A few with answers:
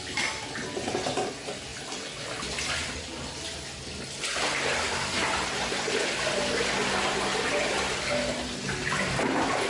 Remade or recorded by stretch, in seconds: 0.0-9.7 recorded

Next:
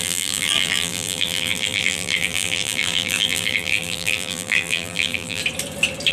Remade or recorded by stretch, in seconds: 0.0-5.4 remade; 5.4-6.1 recorded

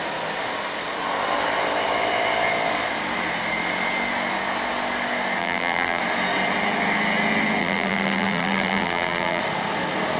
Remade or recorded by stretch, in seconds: 0.0-5.4 recorded; 5.4-6.0 remade; 6.0-7.6 recorded; 7.6-9.4 remade; 9.4-10.2 recorded